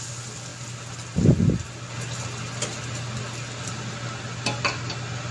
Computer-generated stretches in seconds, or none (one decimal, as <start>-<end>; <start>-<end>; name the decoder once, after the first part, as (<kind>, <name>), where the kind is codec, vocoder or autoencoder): none